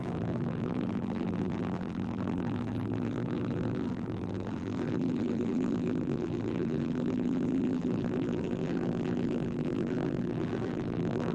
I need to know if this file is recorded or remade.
remade